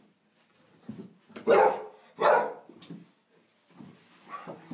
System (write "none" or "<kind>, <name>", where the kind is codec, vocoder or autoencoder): none